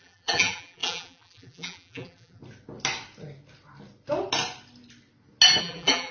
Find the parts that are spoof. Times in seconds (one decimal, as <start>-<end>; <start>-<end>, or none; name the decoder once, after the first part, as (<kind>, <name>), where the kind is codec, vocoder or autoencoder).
0.0-2.4 (vocoder, BigVGAN v2); 5.6-6.1